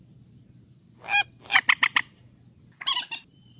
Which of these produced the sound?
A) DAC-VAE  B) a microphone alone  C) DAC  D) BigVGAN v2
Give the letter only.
B